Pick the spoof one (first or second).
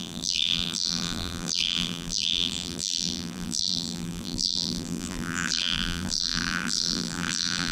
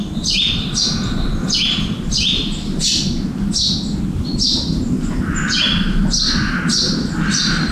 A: first